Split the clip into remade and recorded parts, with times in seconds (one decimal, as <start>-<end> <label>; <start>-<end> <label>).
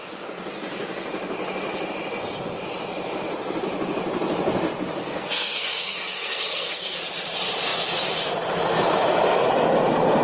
0.0-5.0 recorded; 5.0-7.0 remade; 7.0-10.2 recorded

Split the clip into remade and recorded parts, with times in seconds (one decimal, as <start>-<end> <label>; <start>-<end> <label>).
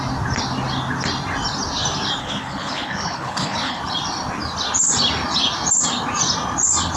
0.0-2.2 recorded; 2.2-3.8 remade; 3.8-7.0 recorded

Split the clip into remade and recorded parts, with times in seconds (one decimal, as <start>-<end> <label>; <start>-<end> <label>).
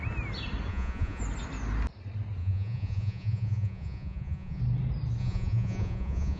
0.0-0.7 recorded; 0.7-1.2 remade; 1.2-2.4 recorded; 2.4-4.6 remade; 4.6-5.2 recorded; 5.2-6.4 remade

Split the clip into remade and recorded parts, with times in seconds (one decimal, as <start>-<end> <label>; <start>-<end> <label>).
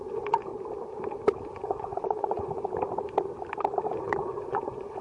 0.0-0.5 remade; 0.5-1.4 recorded; 1.4-2.6 remade; 2.6-4.0 recorded; 4.0-5.0 remade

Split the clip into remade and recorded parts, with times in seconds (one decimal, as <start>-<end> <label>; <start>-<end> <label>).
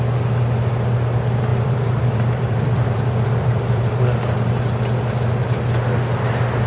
0.0-1.5 recorded; 1.5-4.0 remade; 4.0-6.7 recorded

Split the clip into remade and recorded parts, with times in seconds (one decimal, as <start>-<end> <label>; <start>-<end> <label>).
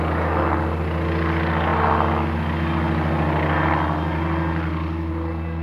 0.0-5.6 recorded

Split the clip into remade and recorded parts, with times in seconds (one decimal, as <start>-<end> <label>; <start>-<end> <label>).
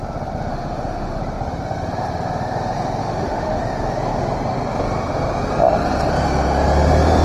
0.0-0.5 recorded; 0.5-1.2 remade; 1.2-3.0 recorded; 3.0-3.6 remade; 3.6-7.2 recorded